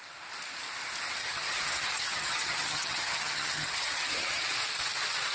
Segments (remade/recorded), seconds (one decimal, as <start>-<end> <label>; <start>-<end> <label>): 0.0-1.2 recorded; 1.2-4.4 remade; 4.4-5.3 recorded